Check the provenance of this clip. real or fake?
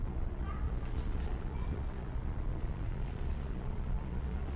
fake